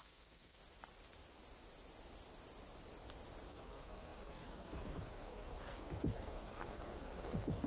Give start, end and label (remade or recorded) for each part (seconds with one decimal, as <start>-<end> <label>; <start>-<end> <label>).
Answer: 0.0-0.6 remade; 0.6-3.5 recorded; 3.5-7.7 remade